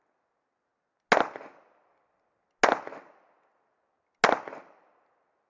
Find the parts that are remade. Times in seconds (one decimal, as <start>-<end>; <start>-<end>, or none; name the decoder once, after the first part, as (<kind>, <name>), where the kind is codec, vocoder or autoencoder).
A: none